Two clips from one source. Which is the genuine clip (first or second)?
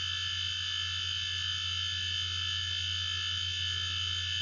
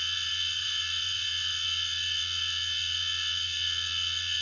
first